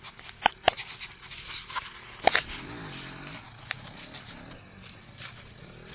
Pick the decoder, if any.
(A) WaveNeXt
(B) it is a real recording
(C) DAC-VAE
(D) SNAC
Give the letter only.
B